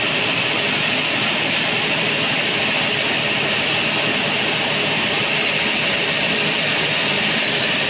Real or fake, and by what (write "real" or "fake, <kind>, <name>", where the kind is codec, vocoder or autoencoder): fake, vocoder, BigVGAN v2